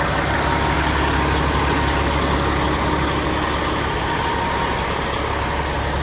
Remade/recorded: recorded